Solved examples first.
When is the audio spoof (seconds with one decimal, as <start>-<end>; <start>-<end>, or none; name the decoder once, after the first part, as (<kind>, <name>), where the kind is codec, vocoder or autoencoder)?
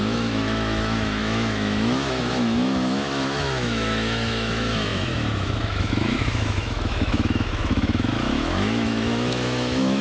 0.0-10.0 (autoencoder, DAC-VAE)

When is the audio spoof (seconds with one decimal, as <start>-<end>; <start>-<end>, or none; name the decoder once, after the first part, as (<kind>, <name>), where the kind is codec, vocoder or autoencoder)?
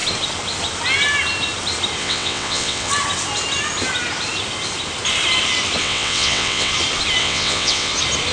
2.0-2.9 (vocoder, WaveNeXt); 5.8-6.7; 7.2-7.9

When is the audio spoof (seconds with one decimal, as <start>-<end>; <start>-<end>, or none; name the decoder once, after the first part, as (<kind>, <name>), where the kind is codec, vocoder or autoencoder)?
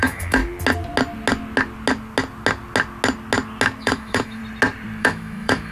0.0-0.4 (autoencoder, DAC-VAE); 3.8-4.4; 5.0-5.7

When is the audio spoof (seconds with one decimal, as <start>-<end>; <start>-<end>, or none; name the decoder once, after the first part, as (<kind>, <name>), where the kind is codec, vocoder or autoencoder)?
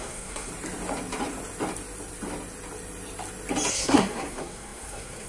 0.0-0.5 (codec, SNAC); 3.7-5.3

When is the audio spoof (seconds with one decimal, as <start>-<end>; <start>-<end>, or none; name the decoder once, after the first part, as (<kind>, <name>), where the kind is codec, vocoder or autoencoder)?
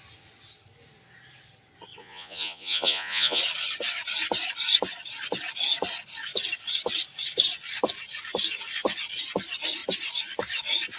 2.0-3.4 (vocoder, Vocos)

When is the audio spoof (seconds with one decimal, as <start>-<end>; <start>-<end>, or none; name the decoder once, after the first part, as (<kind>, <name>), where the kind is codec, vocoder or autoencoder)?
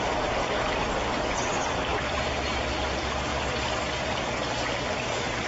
1.9-2.6 (vocoder, BigVGAN v2)